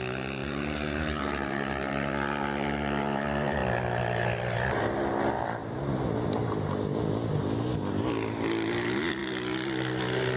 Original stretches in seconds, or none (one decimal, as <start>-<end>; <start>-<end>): 0.0-0.4; 2.1-10.4